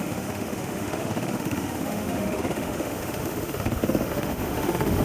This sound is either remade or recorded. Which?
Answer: remade